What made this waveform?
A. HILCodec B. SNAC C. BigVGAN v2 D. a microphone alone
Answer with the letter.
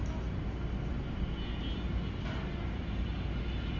D